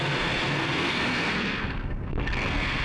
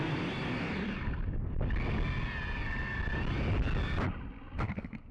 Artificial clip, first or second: first